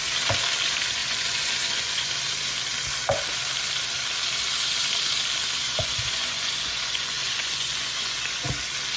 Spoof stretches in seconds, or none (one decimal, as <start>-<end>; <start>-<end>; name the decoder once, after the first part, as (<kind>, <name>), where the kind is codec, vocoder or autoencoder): 1.0-2.1 (vocoder, Vocos); 5.6-8.5